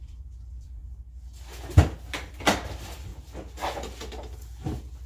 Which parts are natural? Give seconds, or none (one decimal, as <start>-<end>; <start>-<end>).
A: 0.8-2.3; 3.1-5.1

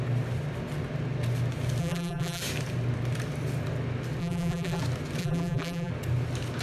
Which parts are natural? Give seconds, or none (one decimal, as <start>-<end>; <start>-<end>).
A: 0.0-1.8; 2.4-4.2; 4.8-5.2; 5.9-6.6